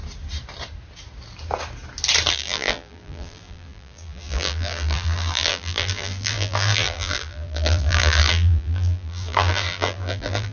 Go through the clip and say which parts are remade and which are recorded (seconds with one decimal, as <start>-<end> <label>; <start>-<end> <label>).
0.0-2.3 recorded; 2.3-10.5 remade